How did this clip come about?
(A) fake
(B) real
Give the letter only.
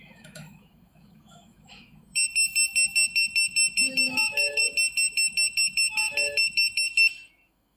A